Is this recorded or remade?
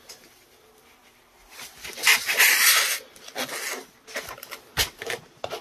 recorded